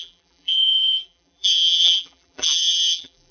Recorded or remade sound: remade